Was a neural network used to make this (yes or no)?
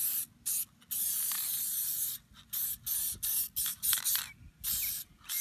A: no